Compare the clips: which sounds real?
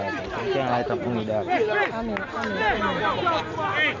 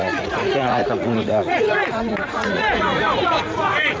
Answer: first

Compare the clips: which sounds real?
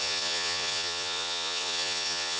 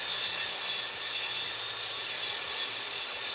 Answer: second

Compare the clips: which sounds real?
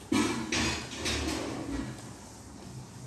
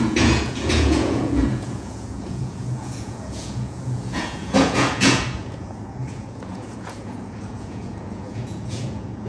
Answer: first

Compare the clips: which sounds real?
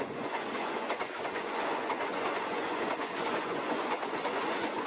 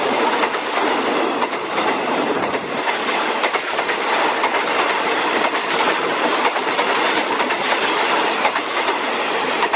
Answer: second